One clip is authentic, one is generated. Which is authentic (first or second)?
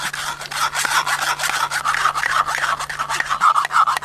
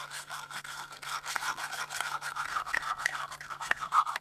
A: first